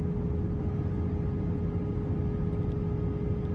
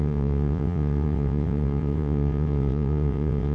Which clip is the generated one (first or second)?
second